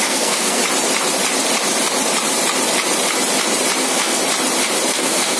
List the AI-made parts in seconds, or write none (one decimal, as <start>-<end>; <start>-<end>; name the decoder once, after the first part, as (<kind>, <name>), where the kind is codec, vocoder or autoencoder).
0.0-0.6 (codec, SNAC); 3.8-4.2; 4.9-5.4